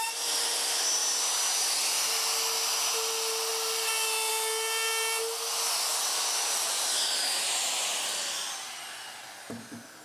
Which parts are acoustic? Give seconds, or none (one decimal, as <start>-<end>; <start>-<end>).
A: 0.0-7.9; 8.8-10.0